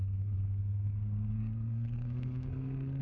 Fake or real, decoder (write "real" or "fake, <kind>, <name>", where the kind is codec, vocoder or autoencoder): fake, codec, SNAC